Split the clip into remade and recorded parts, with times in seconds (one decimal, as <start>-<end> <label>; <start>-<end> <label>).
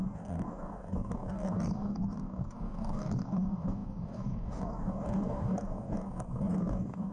0.0-7.1 remade